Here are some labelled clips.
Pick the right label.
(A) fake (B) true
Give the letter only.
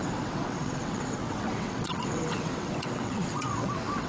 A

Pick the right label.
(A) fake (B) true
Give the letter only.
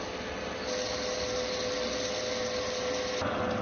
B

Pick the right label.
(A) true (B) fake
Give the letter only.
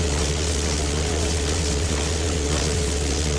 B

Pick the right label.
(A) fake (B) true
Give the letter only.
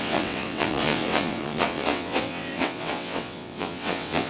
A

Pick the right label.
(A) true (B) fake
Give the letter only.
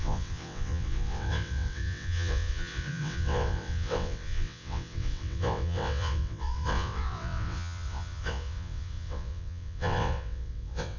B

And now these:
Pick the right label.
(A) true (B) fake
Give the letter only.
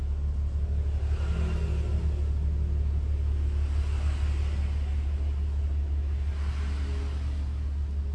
A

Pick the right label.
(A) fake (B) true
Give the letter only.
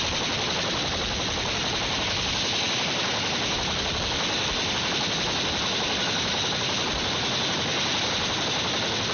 B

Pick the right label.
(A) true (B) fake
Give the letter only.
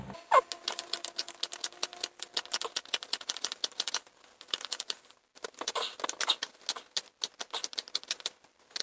A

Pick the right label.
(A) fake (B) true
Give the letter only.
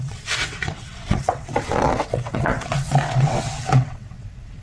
A